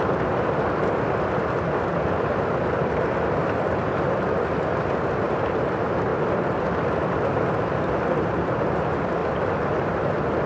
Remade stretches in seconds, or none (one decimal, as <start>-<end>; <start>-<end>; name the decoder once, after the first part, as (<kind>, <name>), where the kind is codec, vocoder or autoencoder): none